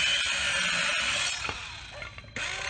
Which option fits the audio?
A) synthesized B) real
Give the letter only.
B